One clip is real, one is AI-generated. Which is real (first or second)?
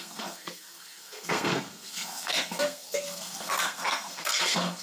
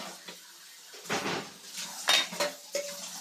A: second